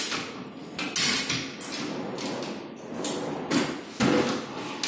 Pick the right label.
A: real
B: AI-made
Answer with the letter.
A